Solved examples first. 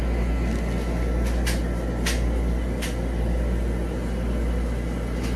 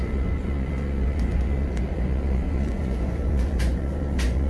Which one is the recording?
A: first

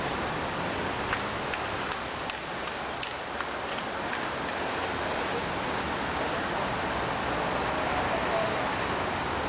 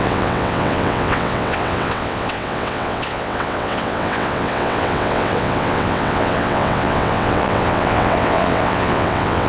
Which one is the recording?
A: first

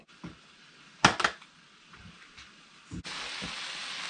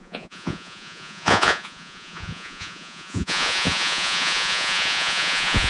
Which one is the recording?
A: first